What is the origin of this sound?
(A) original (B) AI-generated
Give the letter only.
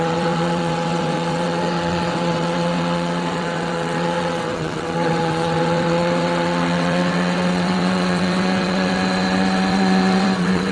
B